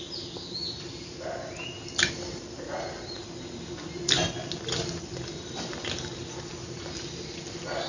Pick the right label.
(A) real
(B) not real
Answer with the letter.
A